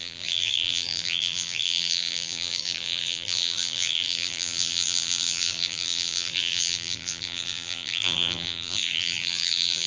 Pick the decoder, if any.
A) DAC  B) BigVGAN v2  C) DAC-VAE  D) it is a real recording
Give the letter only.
B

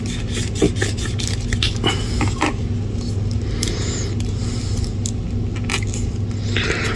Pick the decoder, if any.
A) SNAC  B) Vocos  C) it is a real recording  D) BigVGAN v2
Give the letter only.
C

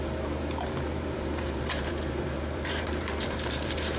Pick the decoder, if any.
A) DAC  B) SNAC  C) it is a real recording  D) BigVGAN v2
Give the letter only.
D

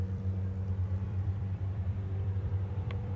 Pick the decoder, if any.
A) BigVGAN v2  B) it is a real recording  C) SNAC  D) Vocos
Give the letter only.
A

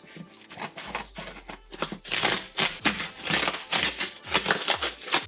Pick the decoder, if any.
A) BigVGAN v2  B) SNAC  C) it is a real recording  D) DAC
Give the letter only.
C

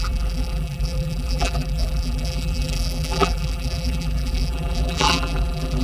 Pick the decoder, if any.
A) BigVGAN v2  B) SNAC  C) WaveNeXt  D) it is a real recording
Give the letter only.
A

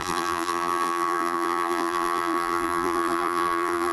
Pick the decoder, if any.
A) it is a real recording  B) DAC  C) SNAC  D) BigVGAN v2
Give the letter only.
D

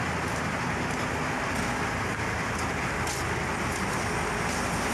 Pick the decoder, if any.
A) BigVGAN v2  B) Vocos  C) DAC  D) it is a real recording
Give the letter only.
D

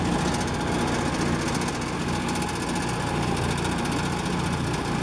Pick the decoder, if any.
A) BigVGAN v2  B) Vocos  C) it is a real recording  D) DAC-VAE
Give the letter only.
C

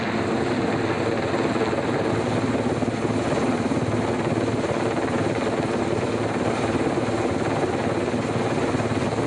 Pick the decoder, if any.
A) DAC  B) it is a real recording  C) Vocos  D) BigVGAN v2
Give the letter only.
B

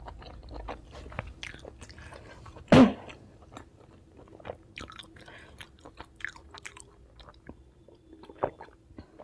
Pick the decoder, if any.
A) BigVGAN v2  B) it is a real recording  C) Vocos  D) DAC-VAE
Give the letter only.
B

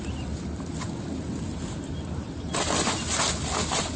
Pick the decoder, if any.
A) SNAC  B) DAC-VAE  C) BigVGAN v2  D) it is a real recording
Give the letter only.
D